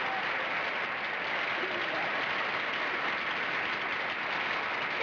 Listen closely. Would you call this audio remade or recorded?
recorded